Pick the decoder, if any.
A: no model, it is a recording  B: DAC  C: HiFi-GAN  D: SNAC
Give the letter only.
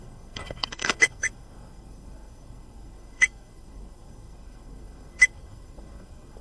D